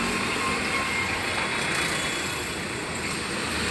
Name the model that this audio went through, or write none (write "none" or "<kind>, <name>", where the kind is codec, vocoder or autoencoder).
none